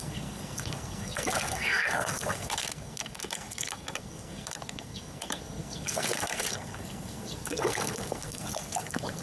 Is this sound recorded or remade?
remade